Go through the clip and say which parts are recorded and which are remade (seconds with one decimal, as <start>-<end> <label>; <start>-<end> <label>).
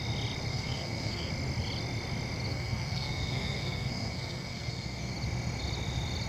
0.0-0.5 recorded; 0.5-1.3 remade; 1.3-2.5 recorded; 2.5-5.1 remade; 5.1-6.3 recorded